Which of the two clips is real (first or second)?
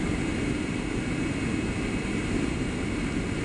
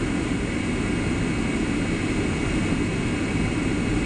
second